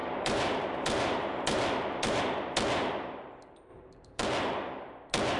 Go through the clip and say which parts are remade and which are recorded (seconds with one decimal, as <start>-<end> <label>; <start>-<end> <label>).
0.0-2.2 remade; 2.2-3.7 recorded; 3.7-4.2 remade; 4.2-5.4 recorded